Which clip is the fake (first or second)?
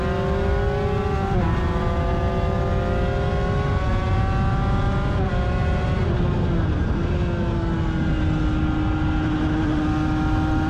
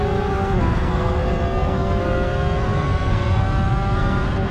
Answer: second